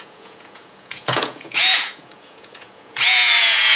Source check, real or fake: fake